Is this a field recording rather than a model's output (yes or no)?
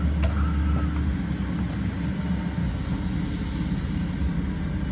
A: yes